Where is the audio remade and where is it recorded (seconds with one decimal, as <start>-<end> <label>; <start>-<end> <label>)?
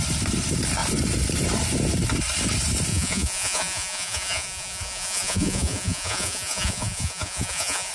0.0-2.9 recorded; 2.9-7.9 remade